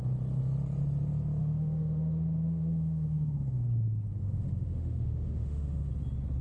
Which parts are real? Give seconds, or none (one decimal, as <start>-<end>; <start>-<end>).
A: 0.0-1.4; 3.6-4.2; 5.9-6.4